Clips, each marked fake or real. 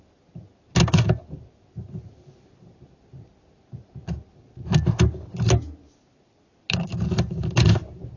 real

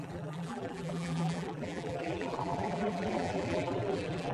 fake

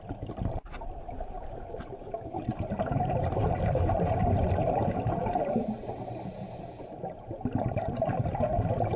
fake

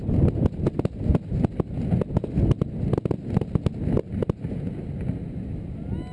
real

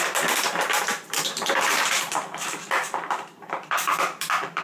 fake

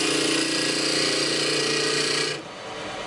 real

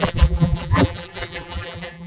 fake